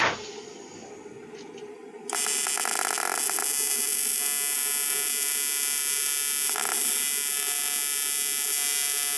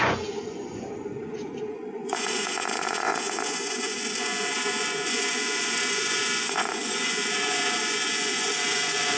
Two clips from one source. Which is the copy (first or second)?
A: second